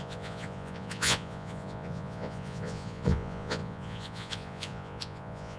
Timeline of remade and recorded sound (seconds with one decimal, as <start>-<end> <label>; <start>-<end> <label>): 0.0-5.6 remade